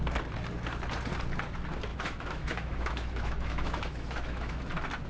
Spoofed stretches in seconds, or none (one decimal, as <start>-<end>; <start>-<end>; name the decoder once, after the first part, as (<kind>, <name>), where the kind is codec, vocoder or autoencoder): 1.9-4.6 (autoencoder, DAC-VAE)